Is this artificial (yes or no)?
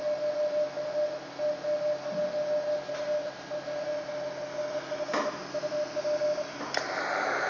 no